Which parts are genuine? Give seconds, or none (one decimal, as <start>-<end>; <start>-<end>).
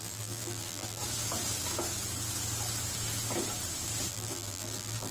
1.0-4.1